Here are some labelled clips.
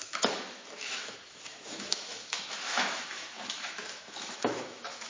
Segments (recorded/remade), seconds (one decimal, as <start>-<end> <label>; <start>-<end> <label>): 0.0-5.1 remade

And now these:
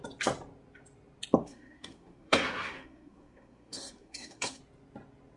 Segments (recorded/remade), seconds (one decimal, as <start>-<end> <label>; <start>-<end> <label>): 0.0-1.4 recorded; 1.4-4.6 remade; 4.6-5.4 recorded

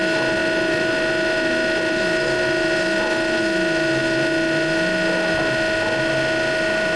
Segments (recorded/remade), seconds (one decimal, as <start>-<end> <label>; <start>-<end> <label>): 0.0-7.0 recorded